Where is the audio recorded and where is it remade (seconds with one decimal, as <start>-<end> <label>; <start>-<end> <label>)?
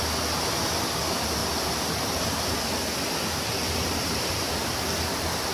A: 0.0-1.4 recorded; 1.4-2.6 remade; 2.6-3.6 recorded; 3.6-4.5 remade; 4.5-5.5 recorded